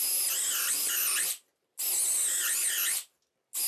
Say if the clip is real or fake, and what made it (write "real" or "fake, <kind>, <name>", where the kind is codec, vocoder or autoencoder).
real